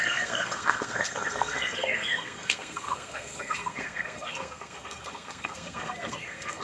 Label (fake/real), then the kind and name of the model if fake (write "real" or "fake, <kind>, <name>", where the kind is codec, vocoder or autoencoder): fake, codec, SNAC